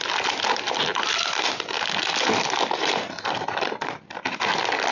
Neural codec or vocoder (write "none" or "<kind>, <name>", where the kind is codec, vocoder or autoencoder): none